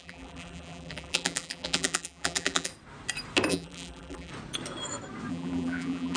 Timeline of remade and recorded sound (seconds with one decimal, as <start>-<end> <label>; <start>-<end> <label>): 0.0-2.7 remade; 2.7-3.5 recorded; 3.5-4.3 remade; 4.3-5.3 recorded; 5.3-6.2 remade